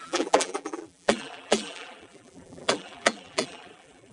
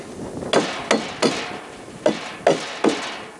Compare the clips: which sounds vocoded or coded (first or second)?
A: first